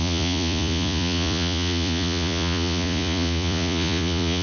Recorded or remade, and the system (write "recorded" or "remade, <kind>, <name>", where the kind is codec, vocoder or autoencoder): remade, vocoder, Vocos